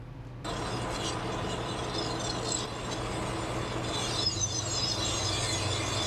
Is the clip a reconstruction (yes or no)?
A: no